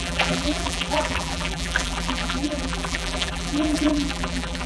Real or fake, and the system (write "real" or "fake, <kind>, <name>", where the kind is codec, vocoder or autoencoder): fake, vocoder, BigVGAN v2